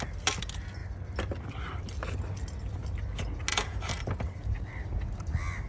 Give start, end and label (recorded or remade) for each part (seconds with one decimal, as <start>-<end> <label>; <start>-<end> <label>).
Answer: 0.0-3.5 recorded; 3.5-4.7 remade; 4.7-5.7 recorded